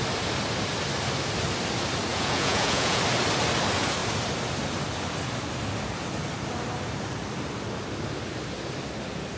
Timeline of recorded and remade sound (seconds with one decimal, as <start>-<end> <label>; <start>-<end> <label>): 0.0-2.1 recorded; 2.1-3.0 remade; 3.0-9.4 recorded